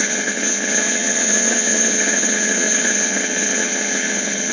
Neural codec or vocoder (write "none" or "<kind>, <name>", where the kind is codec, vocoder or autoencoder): vocoder, HiFi-GAN